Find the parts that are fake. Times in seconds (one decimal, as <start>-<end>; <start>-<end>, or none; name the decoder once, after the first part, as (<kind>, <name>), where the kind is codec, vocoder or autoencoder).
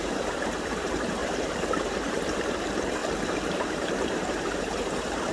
0.0-3.0 (vocoder, BigVGAN v2); 3.5-5.3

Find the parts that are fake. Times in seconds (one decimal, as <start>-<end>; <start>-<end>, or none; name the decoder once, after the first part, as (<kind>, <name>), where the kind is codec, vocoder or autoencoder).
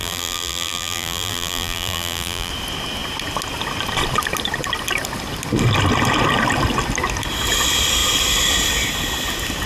0.0-2.5 (vocoder, BigVGAN v2)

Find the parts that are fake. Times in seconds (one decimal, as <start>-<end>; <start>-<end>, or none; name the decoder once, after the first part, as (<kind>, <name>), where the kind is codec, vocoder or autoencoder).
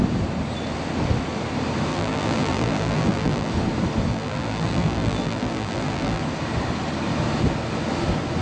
1.9-3.5 (vocoder, BigVGAN v2); 4.1-6.2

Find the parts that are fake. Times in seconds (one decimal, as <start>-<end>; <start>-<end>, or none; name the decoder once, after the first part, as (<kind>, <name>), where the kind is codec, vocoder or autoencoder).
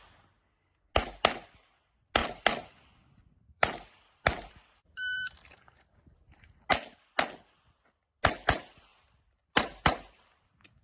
2.2-6.7 (vocoder, BigVGAN v2); 8.9-10.3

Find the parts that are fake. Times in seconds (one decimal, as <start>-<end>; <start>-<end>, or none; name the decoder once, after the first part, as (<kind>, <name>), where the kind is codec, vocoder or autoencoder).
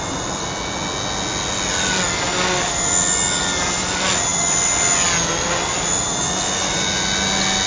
none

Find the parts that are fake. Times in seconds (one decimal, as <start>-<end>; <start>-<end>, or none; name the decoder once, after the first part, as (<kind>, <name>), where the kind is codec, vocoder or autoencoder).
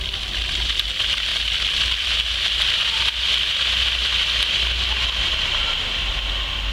none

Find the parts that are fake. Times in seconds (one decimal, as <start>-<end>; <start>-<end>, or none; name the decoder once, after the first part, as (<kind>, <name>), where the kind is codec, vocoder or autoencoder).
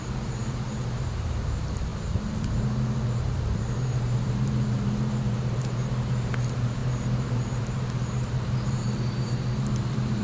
0.0-10.2 (vocoder, BigVGAN v2)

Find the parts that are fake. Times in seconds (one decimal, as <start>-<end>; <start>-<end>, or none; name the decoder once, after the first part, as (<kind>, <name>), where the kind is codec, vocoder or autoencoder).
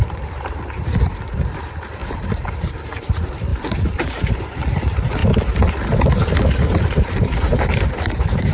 0.0-5.2 (vocoder, BigVGAN v2); 6.4-8.5